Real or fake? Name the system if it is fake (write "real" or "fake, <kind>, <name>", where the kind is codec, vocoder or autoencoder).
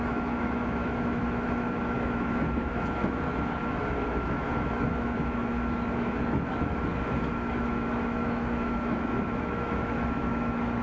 fake, autoencoder, DAC-VAE